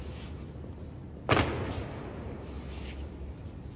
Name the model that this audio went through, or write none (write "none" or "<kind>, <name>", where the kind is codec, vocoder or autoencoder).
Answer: none